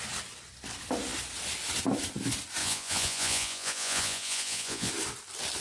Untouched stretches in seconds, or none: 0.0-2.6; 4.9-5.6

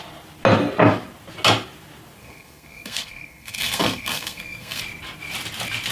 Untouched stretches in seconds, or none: 0.0-2.2; 4.8-5.9

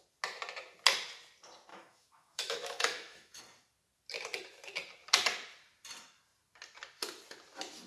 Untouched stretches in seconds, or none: 0.0-1.7; 3.4-7.9

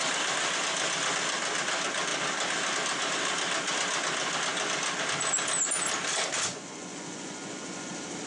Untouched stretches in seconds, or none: 0.0-6.5; 7.9-8.3

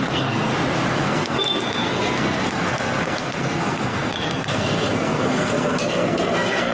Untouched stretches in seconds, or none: 0.5-1.0